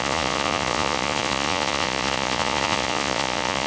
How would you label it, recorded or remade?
remade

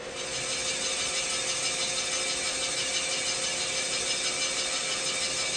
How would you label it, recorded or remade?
recorded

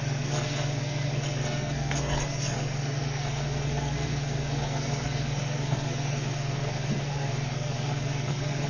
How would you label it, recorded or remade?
remade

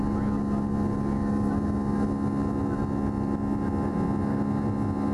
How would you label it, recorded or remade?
recorded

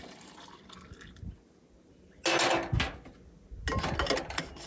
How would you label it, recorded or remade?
recorded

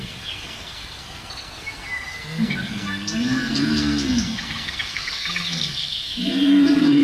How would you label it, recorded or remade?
remade